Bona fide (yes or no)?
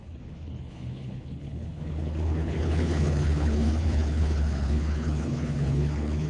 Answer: no